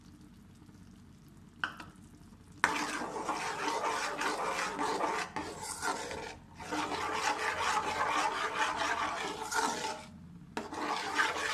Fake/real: real